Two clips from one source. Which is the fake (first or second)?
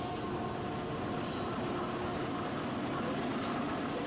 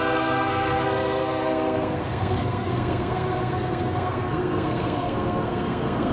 second